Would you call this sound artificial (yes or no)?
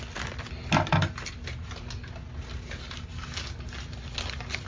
no